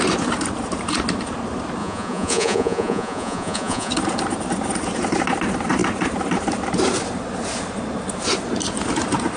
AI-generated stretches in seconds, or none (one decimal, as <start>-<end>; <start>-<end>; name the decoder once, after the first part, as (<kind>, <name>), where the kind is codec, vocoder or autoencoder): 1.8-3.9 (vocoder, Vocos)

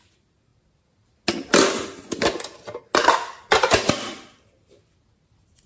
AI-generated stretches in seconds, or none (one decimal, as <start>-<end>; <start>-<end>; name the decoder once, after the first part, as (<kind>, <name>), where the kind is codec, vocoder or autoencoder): none

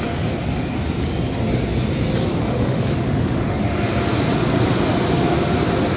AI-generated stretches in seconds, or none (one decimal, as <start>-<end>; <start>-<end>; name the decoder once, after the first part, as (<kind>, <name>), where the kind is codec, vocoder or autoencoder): 2.4-3.6 (autoencoder, DAC-VAE)